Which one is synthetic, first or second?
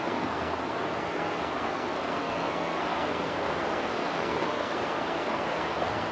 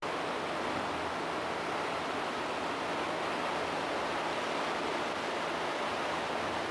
first